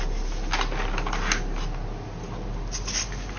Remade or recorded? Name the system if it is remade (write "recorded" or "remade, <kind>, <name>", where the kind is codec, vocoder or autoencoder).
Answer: recorded